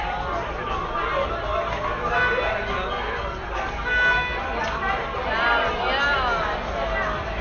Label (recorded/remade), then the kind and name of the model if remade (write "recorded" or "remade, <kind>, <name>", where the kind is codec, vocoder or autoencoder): recorded